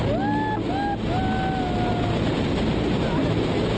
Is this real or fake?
real